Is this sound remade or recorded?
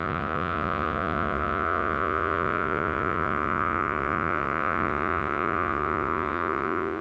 remade